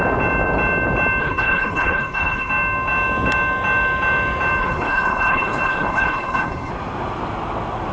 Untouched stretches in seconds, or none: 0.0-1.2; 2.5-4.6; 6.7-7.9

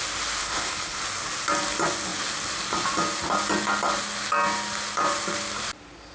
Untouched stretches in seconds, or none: 0.0-0.4; 1.0-6.1

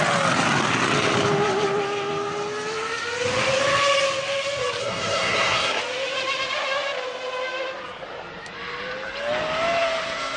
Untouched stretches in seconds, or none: 0.0-4.8; 5.8-10.4

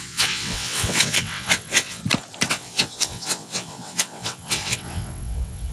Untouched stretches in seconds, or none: 2.0-2.5

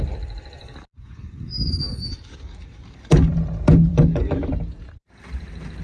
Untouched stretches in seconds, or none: 0.0-0.6; 3.3-3.9; 4.5-5.8